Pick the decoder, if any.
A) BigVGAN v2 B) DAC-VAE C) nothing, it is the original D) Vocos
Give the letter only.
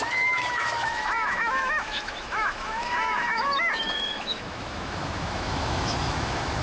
B